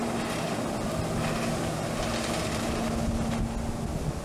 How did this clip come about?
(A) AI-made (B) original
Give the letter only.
B